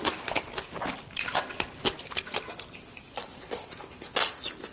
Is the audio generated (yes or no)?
no